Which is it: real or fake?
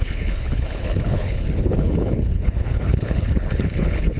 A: fake